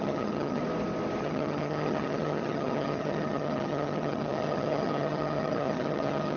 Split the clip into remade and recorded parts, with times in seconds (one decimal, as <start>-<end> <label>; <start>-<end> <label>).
0.0-0.6 remade; 0.6-1.2 recorded; 1.2-6.4 remade